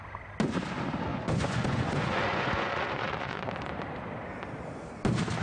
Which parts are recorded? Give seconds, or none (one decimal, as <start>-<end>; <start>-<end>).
0.0-1.1; 3.5-5.4